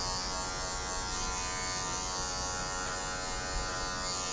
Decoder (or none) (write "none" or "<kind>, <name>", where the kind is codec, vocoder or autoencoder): none